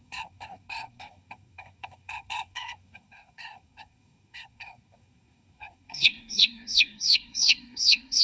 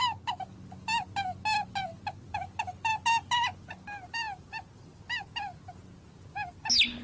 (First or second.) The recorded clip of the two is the second